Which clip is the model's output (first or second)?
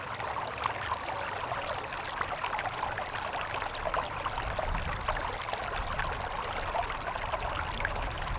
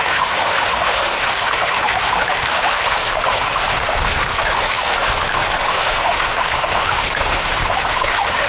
second